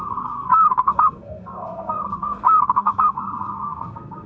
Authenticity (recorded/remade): remade